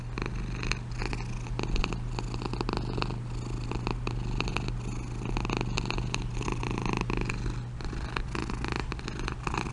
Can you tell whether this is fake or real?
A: real